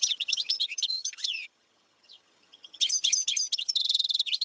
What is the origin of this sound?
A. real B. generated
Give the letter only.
B